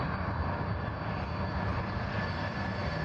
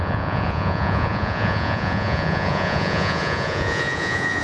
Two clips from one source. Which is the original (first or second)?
first